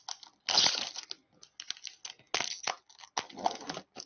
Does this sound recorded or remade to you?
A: recorded